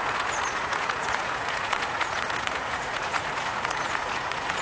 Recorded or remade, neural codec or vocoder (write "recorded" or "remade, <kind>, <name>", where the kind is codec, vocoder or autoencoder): remade, vocoder, Vocos